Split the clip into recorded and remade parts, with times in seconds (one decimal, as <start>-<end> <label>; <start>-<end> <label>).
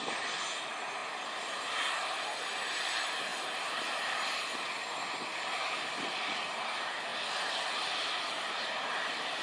0.0-9.4 recorded